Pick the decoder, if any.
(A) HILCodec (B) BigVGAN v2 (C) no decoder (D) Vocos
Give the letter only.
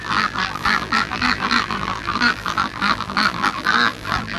B